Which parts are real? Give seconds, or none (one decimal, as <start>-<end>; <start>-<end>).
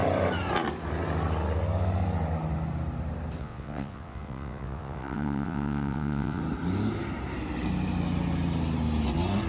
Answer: 0.0-3.4; 6.4-9.5